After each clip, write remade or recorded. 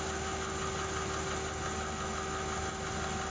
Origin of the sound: recorded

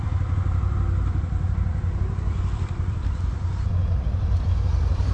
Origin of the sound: remade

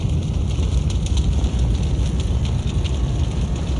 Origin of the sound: remade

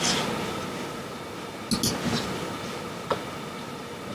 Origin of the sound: recorded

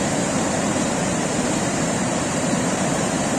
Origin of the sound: remade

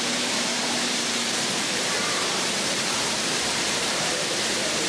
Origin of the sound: remade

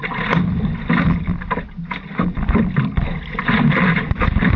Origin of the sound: recorded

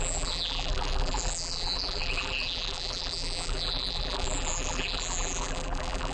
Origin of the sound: remade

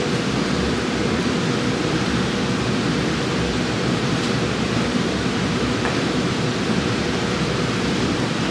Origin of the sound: remade